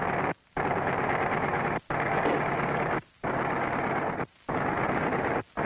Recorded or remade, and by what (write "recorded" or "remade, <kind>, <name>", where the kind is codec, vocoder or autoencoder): recorded